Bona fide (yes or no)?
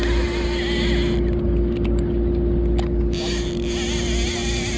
yes